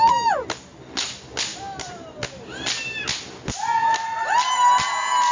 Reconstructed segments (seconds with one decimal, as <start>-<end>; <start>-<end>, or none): 1.5-2.2

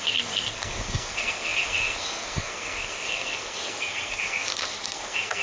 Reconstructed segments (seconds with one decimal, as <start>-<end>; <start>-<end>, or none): 0.0-5.4